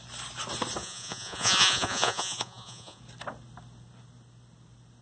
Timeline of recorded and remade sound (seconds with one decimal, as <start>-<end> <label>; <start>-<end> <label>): 0.0-0.8 recorded; 0.8-3.0 remade; 3.0-5.0 recorded